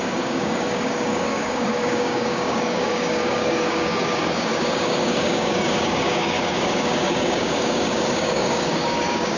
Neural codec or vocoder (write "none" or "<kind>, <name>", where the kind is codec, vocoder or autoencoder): codec, DAC